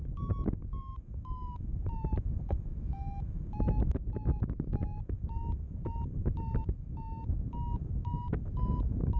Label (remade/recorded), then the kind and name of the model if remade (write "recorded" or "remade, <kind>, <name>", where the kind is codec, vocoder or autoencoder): remade, autoencoder, DAC-VAE